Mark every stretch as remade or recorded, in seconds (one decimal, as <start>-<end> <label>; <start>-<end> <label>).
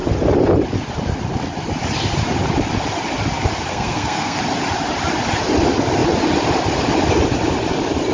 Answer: 0.0-3.7 recorded; 3.7-4.4 remade; 4.4-8.1 recorded